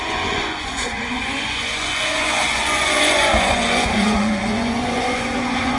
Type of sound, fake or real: fake